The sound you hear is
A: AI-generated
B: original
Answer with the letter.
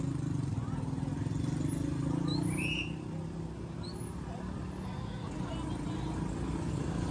B